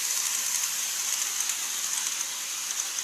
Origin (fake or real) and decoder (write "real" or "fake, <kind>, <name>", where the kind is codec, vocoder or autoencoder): real